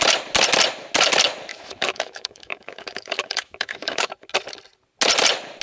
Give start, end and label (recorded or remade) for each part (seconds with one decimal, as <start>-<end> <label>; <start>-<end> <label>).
0.0-1.5 recorded; 1.5-4.1 remade; 4.1-5.6 recorded